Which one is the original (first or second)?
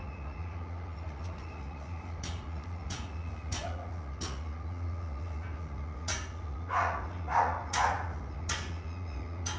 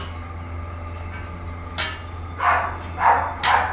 second